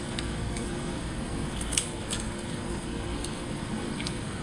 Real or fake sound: fake